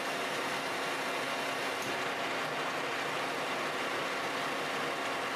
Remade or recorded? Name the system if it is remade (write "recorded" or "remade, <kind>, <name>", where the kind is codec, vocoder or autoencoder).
recorded